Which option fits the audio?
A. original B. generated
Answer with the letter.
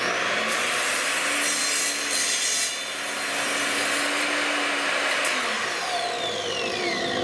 A